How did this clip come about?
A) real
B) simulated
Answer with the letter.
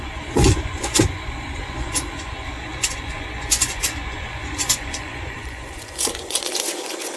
B